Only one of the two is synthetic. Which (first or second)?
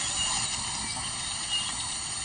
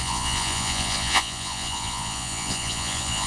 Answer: second